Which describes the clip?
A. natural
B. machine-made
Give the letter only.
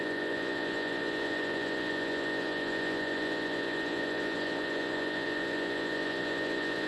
B